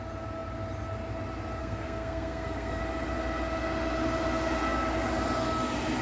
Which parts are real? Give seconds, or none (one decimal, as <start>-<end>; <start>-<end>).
0.0-1.6; 2.8-6.0